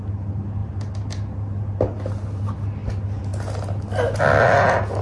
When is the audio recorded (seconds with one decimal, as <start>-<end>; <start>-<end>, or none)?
0.0-5.0